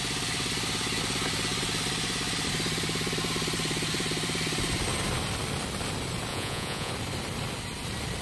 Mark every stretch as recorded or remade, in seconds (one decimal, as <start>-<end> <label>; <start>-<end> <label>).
0.0-6.3 recorded; 6.3-6.9 remade; 6.9-8.2 recorded